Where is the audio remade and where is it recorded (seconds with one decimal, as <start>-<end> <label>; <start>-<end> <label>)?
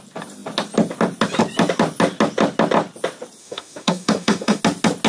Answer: 0.0-3.4 recorded; 3.4-4.6 remade; 4.6-5.1 recorded